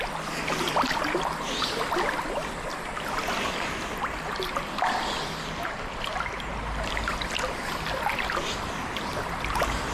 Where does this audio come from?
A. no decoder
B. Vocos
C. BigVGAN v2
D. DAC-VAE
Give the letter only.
A